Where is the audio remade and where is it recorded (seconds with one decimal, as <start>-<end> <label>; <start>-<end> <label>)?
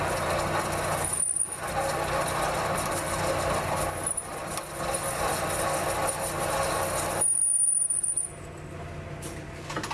0.0-9.9 recorded